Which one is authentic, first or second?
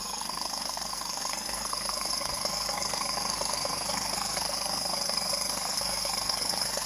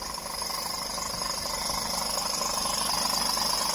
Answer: second